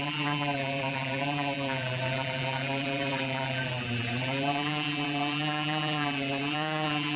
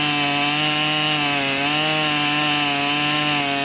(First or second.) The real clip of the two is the second